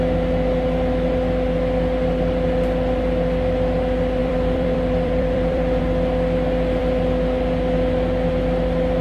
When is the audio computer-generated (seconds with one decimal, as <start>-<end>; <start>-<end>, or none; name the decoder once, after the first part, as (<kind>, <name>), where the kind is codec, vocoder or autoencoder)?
4.2-5.8 (vocoder, BigVGAN v2)